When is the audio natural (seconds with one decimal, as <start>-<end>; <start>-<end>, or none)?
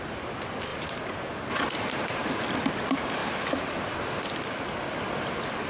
0.0-0.7; 2.3-3.2; 4.0-5.7